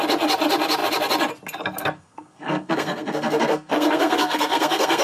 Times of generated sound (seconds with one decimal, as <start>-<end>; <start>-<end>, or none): 1.8-5.0